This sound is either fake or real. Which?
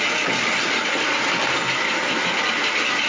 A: real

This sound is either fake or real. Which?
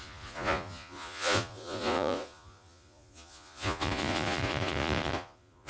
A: fake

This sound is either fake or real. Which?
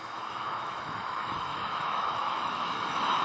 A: fake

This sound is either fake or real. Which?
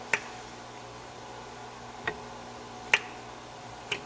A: real